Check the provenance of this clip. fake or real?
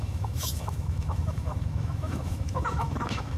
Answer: fake